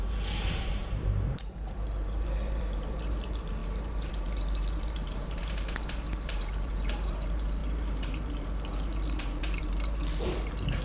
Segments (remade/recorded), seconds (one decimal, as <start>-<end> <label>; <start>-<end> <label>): 0.0-10.8 remade